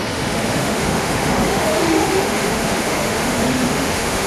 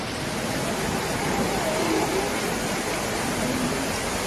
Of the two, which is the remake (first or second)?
first